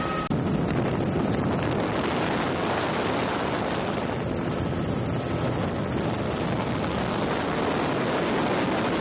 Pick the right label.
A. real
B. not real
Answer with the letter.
A